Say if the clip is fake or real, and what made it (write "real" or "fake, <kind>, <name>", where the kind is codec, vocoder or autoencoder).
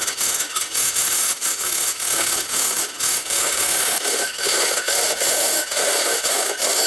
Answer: fake, autoencoder, DAC-VAE